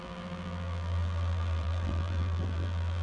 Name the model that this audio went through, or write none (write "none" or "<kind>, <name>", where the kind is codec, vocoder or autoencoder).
vocoder, BigVGAN v2